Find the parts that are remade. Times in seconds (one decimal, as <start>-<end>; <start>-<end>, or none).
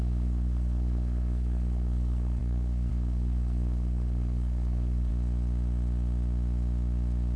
0.0-5.1